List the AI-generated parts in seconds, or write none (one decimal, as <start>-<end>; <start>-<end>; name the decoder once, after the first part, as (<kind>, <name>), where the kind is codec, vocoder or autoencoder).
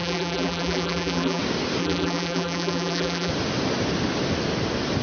0.0-1.4 (vocoder, BigVGAN v2); 1.8-3.3